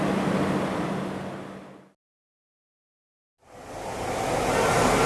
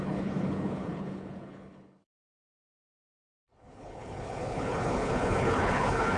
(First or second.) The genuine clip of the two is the first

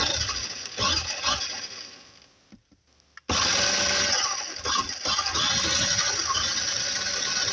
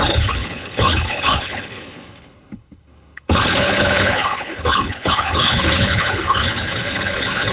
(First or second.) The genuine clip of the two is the first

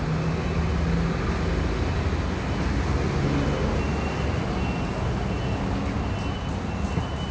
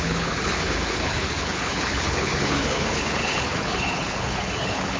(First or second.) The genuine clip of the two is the first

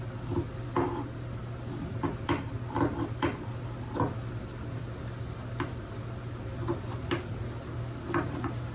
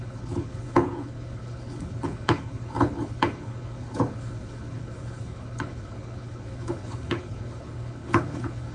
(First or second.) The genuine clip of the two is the first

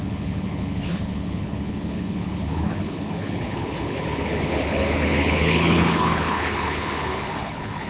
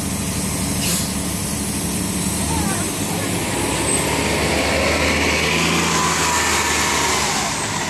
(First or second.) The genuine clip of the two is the second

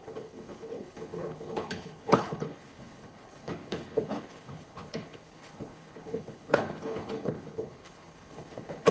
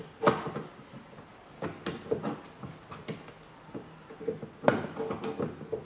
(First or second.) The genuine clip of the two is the second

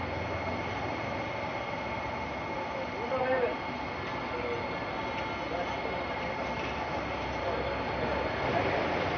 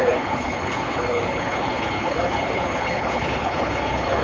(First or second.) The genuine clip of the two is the first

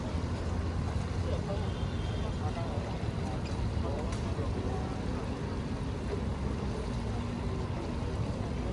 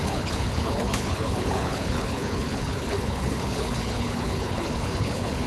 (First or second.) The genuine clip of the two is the first